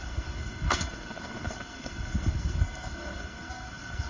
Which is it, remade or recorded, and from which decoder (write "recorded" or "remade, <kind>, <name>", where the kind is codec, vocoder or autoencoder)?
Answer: remade, codec, SNAC